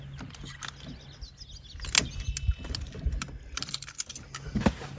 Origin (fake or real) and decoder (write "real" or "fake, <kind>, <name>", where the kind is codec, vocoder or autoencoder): real